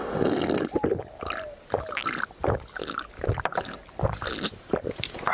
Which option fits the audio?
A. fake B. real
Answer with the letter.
B